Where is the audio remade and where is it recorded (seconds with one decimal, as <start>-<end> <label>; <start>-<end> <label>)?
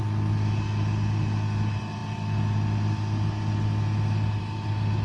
0.0-5.0 recorded